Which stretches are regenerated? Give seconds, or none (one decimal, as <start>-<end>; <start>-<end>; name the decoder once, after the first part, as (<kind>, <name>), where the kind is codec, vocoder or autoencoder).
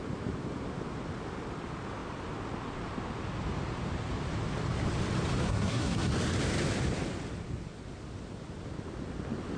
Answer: 5.4-6.1 (codec, SNAC)